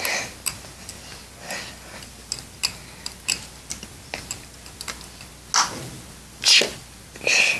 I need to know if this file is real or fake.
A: real